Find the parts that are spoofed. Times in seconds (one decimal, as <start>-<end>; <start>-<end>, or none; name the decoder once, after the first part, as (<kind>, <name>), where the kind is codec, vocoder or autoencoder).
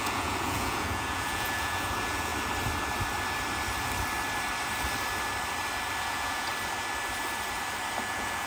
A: 0.0-2.3 (vocoder, Vocos); 6.0-6.5; 8.0-8.5